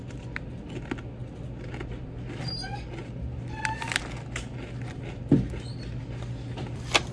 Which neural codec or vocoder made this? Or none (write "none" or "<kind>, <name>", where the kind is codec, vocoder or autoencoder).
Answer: none